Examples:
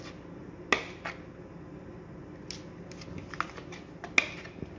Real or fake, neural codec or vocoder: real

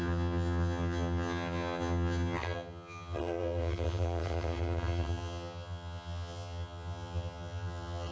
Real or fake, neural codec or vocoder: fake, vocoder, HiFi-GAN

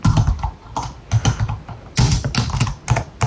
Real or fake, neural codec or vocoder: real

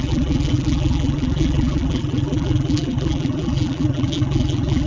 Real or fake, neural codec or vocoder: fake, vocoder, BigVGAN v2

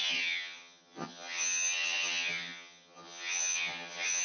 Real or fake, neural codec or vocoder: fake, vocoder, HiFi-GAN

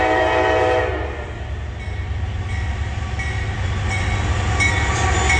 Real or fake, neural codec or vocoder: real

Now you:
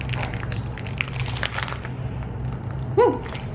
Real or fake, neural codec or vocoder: real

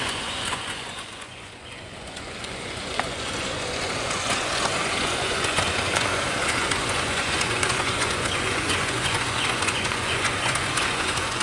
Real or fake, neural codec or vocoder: fake, vocoder, Vocos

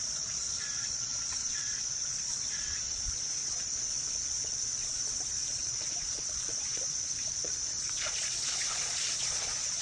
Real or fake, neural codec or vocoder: fake, vocoder, Vocos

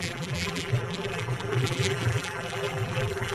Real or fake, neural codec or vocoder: fake, vocoder, BigVGAN v2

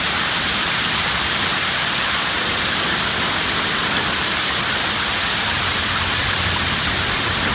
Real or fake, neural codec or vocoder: fake, vocoder, BigVGAN v2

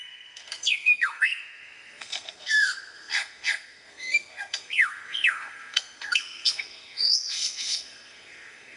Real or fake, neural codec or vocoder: fake, codec, SNAC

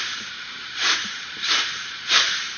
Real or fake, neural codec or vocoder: fake, vocoder, BigVGAN v2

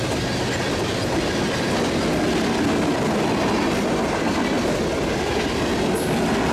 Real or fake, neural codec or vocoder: real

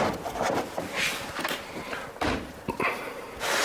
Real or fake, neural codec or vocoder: real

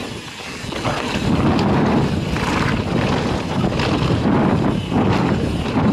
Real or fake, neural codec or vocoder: real